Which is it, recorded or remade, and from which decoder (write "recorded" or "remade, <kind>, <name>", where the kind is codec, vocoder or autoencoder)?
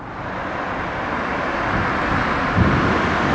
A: recorded